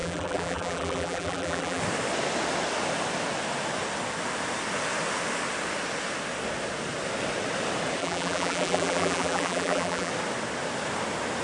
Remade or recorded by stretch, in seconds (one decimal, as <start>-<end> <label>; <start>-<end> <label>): 0.0-1.8 remade; 1.8-8.0 recorded; 8.0-10.1 remade; 10.1-11.4 recorded